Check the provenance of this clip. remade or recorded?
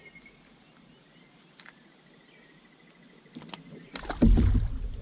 remade